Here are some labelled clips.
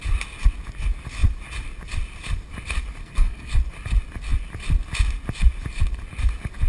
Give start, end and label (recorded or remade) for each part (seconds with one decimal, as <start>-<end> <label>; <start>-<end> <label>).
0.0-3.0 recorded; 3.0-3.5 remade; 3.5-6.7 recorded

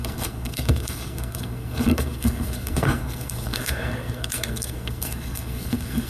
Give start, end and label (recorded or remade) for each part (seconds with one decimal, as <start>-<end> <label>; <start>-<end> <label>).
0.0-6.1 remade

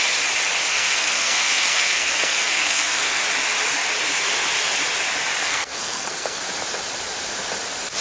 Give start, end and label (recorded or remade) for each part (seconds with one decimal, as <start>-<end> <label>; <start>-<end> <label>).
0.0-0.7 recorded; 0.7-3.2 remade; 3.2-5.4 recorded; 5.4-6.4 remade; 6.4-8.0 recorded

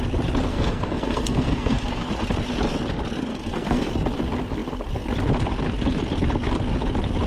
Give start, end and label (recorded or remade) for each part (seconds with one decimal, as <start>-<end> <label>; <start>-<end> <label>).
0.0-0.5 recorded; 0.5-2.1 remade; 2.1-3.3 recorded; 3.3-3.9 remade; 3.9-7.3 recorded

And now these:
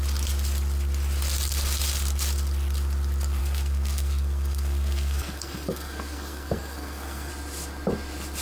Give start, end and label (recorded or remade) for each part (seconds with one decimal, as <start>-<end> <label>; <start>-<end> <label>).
0.0-3.4 recorded; 3.4-7.3 remade; 7.3-8.4 recorded

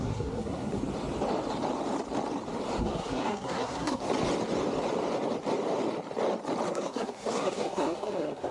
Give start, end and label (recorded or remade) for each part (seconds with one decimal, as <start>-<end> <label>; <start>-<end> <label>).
0.0-0.8 remade; 0.8-2.8 recorded; 2.8-4.0 remade; 4.0-6.7 recorded; 6.7-8.5 remade

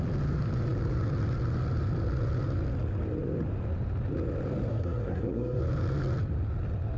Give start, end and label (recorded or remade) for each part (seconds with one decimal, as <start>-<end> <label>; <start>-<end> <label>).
0.0-4.7 recorded; 4.7-5.6 remade; 5.6-7.0 recorded